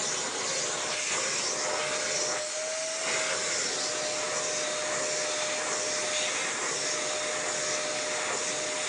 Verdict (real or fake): real